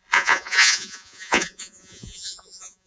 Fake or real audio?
fake